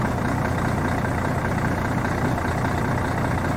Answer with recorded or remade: recorded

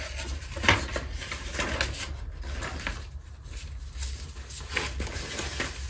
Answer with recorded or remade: recorded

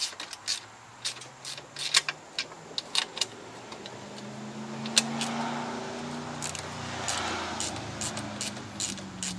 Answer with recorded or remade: recorded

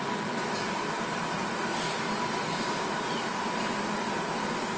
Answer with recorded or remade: recorded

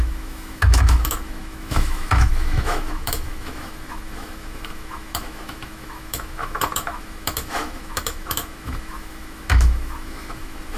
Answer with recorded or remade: remade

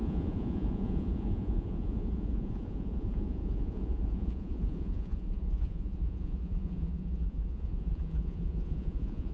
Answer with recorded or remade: remade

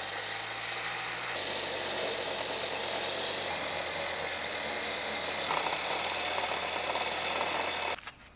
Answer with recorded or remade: recorded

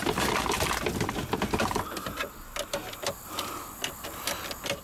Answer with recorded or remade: remade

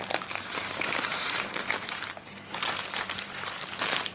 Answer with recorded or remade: remade